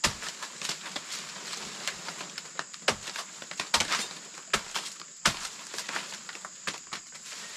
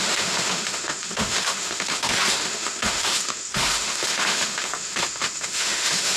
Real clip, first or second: first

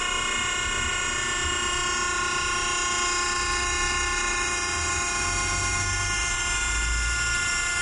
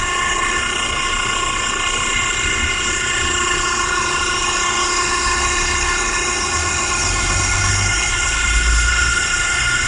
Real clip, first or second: first